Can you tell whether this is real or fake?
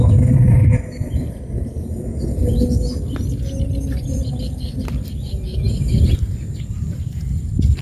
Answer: real